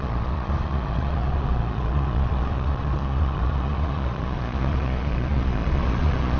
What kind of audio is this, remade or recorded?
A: remade